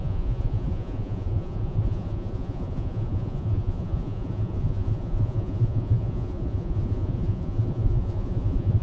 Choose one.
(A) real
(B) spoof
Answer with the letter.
B